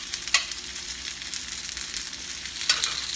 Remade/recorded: recorded